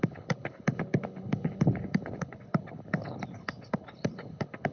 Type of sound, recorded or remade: remade